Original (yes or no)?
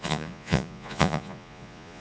no